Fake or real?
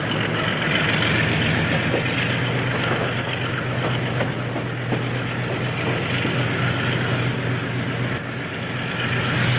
real